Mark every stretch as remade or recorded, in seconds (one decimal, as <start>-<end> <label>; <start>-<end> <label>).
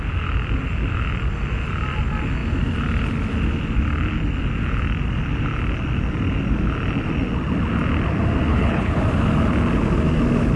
0.0-8.5 recorded; 8.5-9.0 remade; 9.0-10.6 recorded